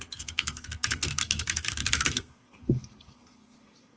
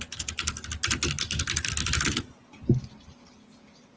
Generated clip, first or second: first